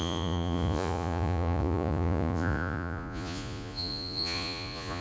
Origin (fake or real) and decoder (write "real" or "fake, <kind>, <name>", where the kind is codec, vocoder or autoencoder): fake, vocoder, Vocos